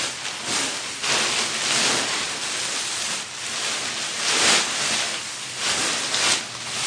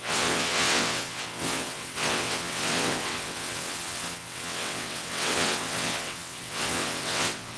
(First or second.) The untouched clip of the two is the first